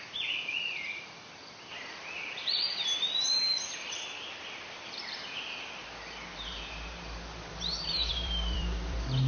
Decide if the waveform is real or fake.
fake